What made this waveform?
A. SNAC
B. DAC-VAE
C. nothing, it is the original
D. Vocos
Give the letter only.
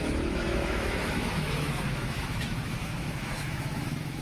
B